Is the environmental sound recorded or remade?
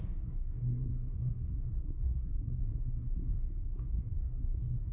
remade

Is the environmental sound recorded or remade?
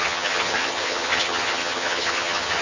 remade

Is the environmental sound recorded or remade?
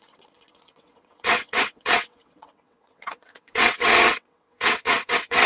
remade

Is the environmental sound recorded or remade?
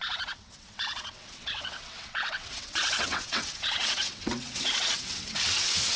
remade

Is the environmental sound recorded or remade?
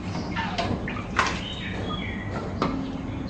recorded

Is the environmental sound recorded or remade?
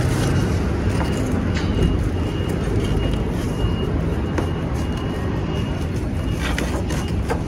recorded